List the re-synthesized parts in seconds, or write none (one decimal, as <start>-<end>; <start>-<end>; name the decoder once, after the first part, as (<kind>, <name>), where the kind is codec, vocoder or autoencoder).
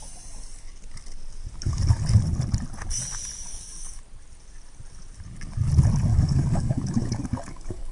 3.5-4.0 (codec, DAC); 6.1-7.9